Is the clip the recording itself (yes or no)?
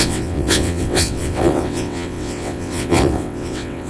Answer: no